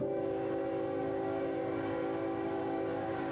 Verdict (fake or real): fake